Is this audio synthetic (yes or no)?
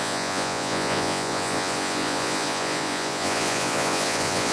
yes